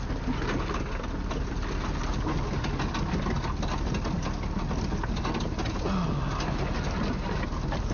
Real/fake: real